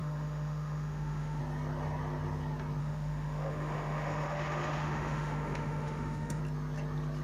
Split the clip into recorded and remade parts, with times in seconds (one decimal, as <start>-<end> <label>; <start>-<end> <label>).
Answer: 0.0-1.4 remade; 1.4-2.8 recorded; 2.8-6.4 remade; 6.4-7.2 recorded